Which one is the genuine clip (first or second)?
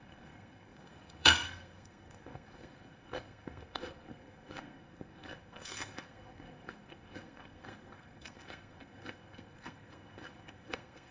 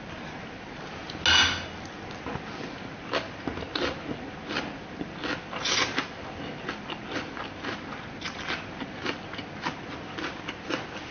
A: second